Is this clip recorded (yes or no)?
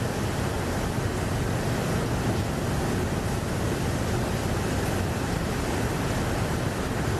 yes